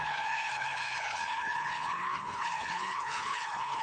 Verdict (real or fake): fake